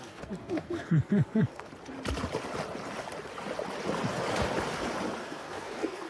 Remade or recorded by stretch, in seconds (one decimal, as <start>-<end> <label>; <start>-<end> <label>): 0.0-1.7 remade; 1.7-5.2 recorded; 5.2-6.1 remade